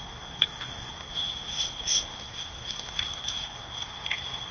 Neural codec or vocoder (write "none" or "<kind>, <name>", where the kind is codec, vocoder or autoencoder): codec, SNAC